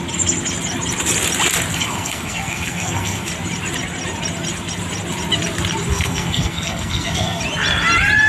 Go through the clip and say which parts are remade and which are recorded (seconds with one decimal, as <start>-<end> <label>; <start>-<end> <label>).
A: 0.0-1.7 recorded; 1.7-3.3 remade; 3.3-5.9 recorded; 5.9-7.4 remade; 7.4-8.3 recorded